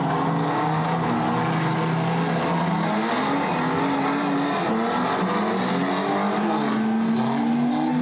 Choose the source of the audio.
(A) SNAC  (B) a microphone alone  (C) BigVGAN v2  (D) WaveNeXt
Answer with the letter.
B